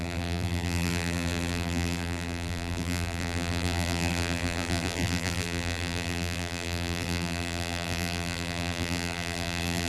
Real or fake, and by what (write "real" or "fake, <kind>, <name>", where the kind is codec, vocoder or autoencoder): fake, vocoder, BigVGAN v2